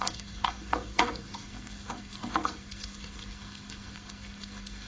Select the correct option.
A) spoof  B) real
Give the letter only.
A